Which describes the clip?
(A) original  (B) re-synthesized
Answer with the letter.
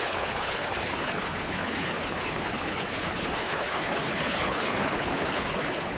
B